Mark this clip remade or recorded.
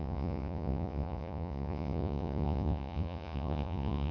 remade